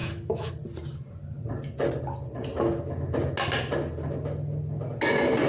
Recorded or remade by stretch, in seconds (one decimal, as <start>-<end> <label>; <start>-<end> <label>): 0.0-0.5 remade; 0.5-5.5 recorded